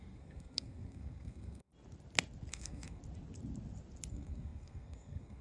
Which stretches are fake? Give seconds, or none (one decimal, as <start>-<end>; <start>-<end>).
0.0-1.7; 2.5-3.0; 4.1-5.4